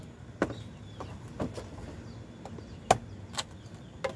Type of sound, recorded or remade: recorded